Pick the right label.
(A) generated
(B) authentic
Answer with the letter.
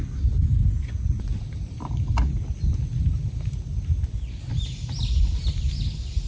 B